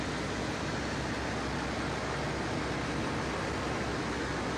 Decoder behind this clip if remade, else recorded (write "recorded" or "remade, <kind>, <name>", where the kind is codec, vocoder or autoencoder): recorded